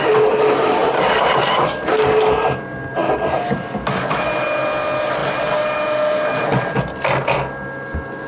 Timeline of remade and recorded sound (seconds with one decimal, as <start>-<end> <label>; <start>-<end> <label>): 0.0-0.8 recorded; 0.8-2.4 remade; 2.4-5.2 recorded; 5.2-6.4 remade; 6.4-8.3 recorded